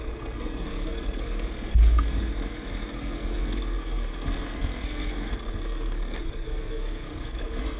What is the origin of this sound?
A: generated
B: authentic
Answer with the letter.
A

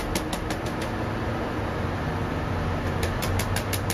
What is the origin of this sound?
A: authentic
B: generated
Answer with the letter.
A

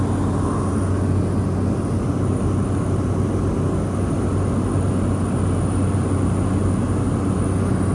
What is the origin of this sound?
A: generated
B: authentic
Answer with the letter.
B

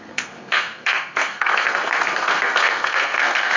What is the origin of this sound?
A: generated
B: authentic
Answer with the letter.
A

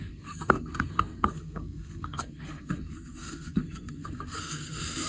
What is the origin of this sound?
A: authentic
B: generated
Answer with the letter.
B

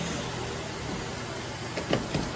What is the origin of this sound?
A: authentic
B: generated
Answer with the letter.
A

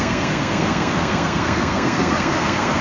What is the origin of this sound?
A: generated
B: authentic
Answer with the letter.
A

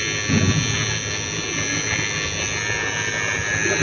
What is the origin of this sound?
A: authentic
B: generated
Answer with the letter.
A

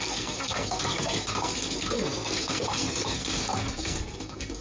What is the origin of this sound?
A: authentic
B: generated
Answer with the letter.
B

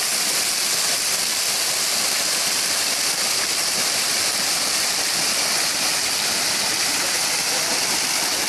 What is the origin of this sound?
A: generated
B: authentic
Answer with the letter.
B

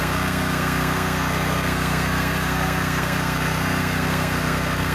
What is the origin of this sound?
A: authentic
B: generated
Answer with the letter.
B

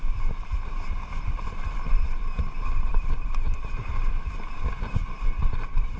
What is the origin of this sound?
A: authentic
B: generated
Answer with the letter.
A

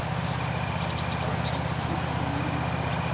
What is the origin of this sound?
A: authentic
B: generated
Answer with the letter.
A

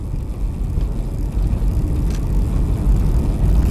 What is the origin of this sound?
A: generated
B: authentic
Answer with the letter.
B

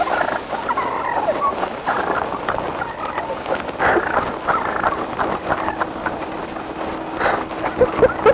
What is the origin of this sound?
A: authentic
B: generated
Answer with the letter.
A